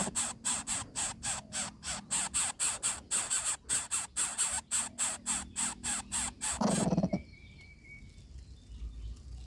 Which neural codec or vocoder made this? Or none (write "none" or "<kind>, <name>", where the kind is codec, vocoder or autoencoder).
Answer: none